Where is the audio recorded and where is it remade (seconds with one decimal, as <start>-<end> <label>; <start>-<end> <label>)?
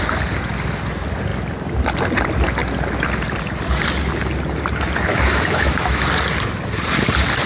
0.0-5.1 recorded; 5.1-6.0 remade; 6.0-7.5 recorded